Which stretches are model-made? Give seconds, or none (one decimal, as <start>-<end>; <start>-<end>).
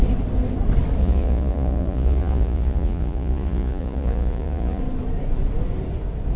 1.0-4.8